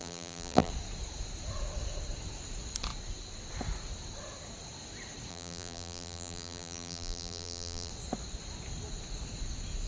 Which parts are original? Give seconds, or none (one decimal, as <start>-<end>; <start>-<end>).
0.7-5.3; 7.9-9.9